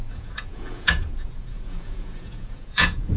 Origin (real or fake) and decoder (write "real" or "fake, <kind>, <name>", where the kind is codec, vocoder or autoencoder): fake, vocoder, Vocos